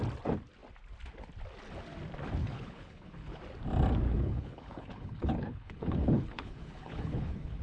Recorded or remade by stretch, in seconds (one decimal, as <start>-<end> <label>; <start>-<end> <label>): 0.0-2.4 recorded; 2.4-3.4 remade; 3.4-4.1 recorded; 4.1-7.6 remade